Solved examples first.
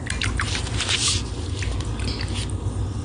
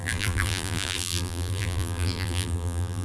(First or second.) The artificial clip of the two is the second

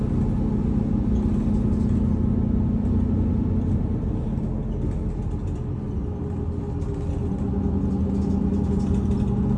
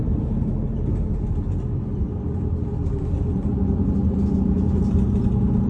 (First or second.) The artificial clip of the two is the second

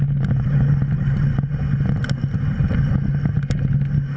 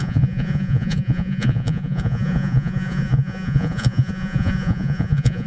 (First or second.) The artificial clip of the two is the second